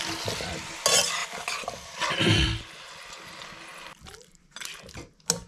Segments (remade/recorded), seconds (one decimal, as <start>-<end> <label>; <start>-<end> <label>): 0.0-1.2 recorded; 1.2-2.6 remade; 2.6-3.7 recorded; 3.7-4.7 remade; 4.7-5.5 recorded